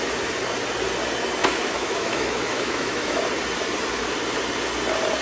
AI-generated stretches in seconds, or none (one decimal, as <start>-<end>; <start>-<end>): 1.4-3.2